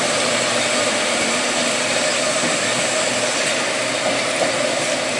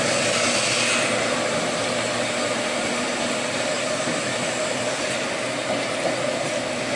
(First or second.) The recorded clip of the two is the second